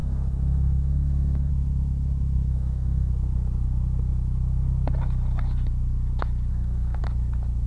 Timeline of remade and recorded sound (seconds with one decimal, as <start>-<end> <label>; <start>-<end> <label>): 0.0-1.5 remade; 1.5-2.5 recorded; 2.5-3.1 remade; 3.1-6.5 recorded; 6.5-7.0 remade; 7.0-7.7 recorded